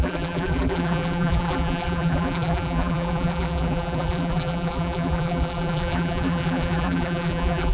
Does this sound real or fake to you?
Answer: fake